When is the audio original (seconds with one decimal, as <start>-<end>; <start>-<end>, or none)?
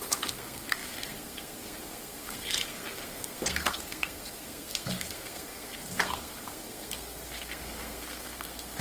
none